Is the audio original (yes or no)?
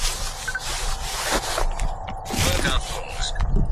yes